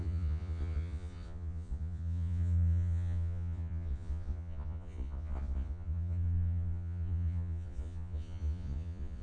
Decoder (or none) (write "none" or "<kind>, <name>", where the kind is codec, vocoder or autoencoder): vocoder, Vocos